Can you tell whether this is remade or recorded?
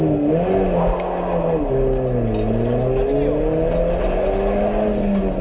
recorded